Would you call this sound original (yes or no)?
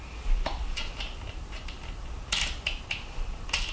no